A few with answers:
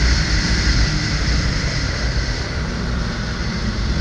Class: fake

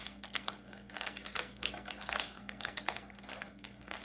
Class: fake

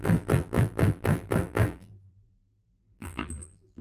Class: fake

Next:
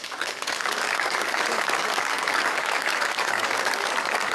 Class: fake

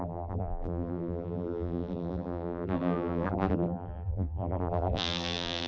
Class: fake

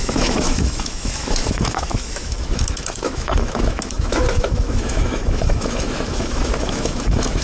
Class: fake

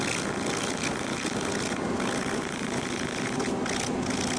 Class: real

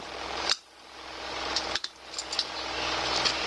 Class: real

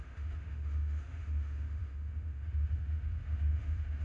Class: fake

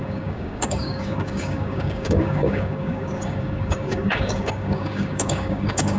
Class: fake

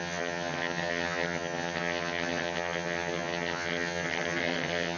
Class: fake